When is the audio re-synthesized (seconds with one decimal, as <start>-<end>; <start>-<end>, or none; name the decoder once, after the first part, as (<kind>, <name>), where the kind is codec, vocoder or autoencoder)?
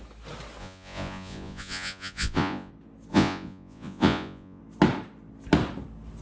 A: 0.6-2.7 (vocoder, Vocos); 3.1-4.6